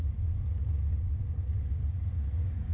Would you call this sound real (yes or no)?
yes